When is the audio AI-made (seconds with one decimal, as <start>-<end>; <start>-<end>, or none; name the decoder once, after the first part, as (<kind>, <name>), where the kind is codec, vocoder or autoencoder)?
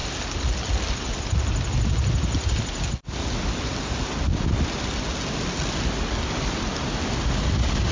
none